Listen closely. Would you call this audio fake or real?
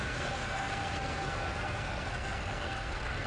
fake